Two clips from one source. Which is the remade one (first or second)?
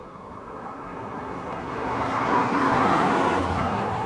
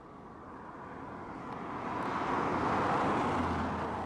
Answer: first